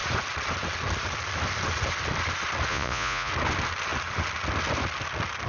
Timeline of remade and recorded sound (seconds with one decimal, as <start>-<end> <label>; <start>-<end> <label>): 0.0-2.7 recorded; 2.7-3.3 remade; 3.3-5.5 recorded